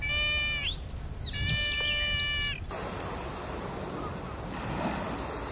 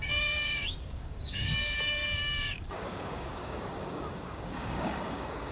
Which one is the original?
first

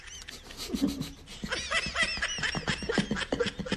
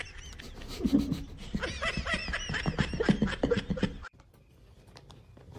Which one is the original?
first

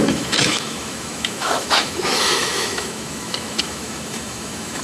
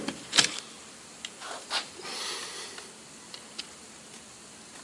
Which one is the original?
second